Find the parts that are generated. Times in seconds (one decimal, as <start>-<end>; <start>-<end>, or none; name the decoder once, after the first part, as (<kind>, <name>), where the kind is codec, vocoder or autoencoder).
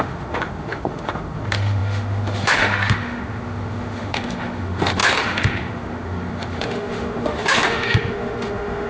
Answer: 0.0-8.9 (autoencoder, DAC-VAE)